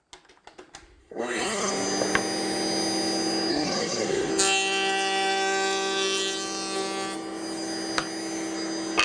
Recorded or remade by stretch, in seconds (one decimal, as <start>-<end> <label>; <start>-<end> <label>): 0.0-1.0 recorded; 1.0-1.7 remade; 1.7-3.5 recorded; 3.5-4.3 remade; 4.3-9.0 recorded